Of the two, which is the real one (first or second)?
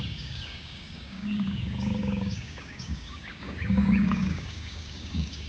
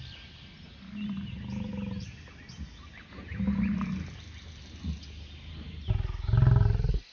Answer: second